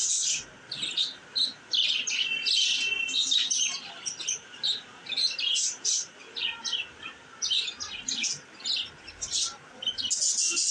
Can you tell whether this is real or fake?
real